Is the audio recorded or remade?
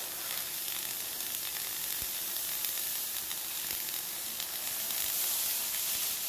recorded